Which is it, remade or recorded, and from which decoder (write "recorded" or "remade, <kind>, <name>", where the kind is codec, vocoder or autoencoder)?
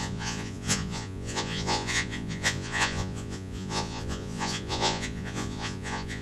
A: remade, vocoder, Vocos